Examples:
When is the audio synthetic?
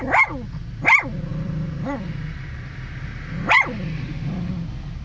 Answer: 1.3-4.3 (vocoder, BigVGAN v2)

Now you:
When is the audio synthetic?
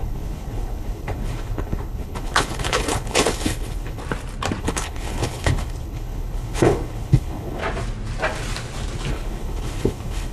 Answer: 0.0-4.0 (codec, HILCodec); 4.6-7.6; 9.1-10.3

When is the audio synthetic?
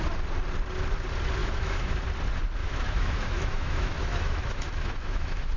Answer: 1.4-2.0 (autoencoder, DAC-VAE); 2.6-5.6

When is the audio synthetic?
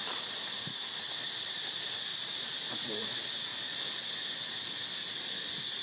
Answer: 2.1-3.1 (vocoder, BigVGAN v2)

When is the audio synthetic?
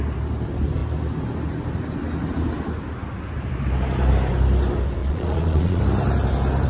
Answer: 5.0-5.8 (vocoder, Vocos)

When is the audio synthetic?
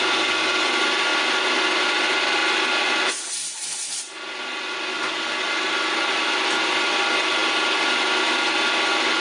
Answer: none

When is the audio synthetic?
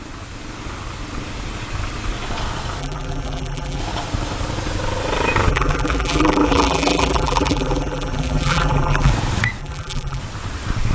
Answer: 2.8-3.8 (vocoder, BigVGAN v2); 5.5-9.1; 9.6-10.2